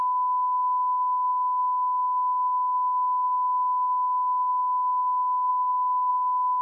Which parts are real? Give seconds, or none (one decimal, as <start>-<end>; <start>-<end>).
0.0-6.6